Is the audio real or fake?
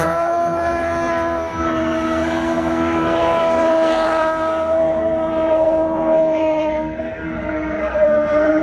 fake